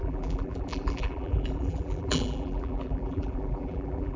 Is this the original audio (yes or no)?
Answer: no